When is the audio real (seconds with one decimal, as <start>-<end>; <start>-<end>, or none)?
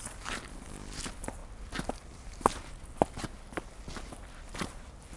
0.0-5.2